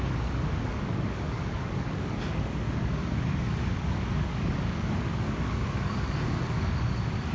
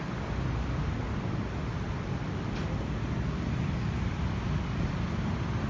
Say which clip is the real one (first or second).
second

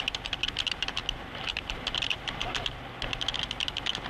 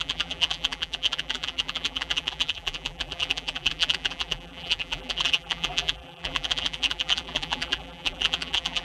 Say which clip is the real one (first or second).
first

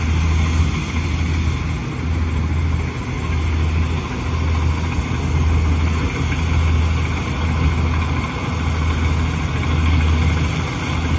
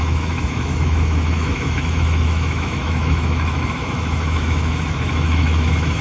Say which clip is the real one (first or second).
first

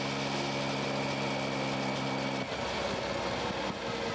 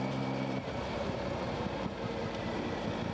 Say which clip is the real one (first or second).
first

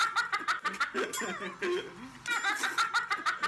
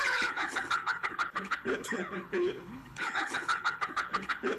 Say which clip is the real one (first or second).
first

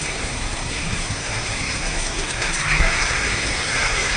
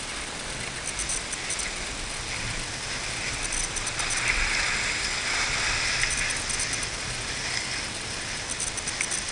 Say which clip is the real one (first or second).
second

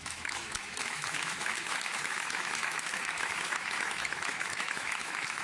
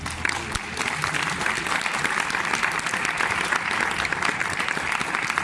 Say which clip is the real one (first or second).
second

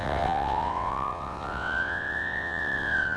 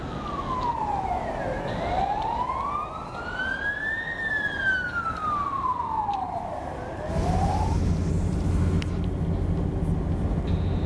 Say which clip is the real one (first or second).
second